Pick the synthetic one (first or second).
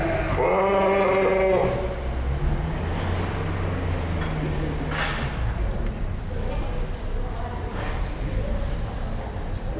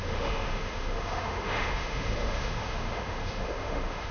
second